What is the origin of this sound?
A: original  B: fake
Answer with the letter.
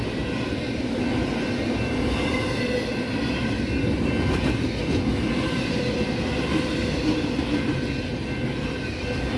A